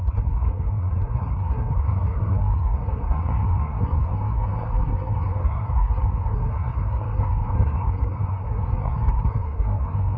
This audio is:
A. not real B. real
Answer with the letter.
A